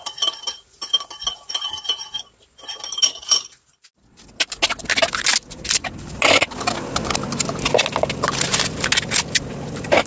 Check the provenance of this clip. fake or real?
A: real